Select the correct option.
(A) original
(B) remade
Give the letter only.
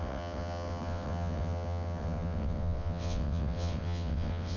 B